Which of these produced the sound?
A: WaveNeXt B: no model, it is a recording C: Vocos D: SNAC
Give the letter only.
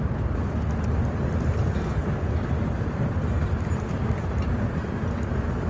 B